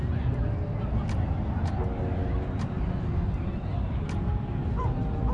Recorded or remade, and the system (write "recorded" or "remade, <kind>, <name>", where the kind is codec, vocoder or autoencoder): recorded